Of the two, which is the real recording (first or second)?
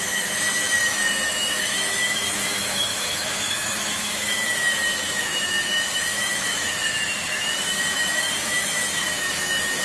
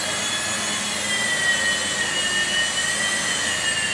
second